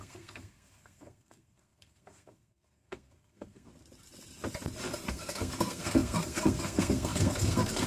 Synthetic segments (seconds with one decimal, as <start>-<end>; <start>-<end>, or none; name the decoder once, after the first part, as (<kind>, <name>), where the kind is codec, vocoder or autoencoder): 0.0-3.7 (codec, SNAC); 5.1-7.9